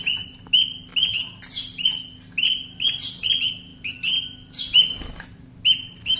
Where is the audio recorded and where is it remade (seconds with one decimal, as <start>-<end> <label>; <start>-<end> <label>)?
0.0-6.2 recorded